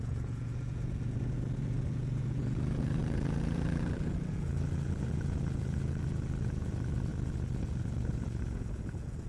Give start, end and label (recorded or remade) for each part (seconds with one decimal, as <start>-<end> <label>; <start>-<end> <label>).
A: 0.0-9.3 remade